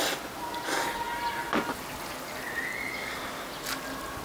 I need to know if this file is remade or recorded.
recorded